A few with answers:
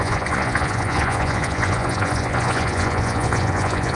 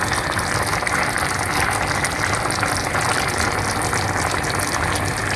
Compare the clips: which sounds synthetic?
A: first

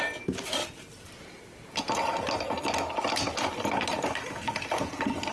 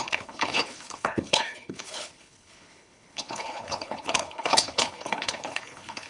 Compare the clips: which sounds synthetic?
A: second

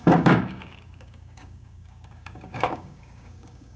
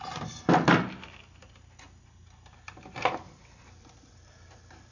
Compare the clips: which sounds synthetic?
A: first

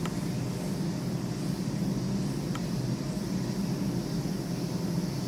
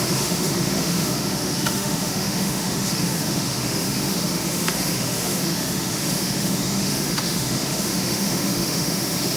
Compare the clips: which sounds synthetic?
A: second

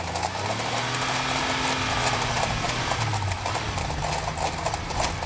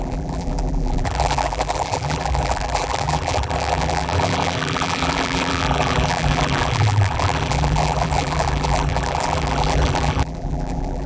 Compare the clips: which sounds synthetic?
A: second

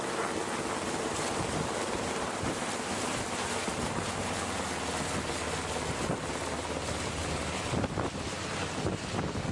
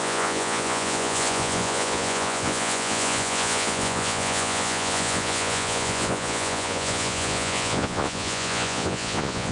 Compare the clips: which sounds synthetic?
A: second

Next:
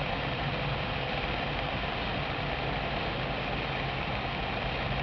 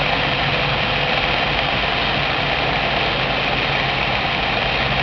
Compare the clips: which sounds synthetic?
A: first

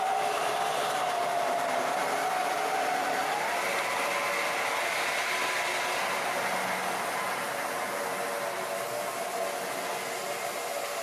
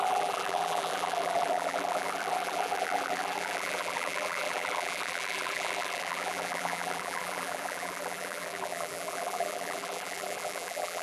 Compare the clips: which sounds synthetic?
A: second